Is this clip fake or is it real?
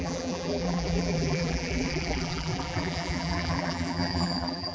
fake